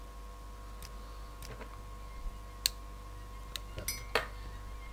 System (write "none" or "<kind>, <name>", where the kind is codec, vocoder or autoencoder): none